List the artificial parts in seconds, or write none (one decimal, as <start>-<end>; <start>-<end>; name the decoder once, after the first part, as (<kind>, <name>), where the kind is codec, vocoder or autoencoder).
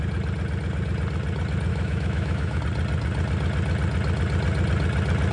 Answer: 1.7-2.6 (autoencoder, DAC-VAE)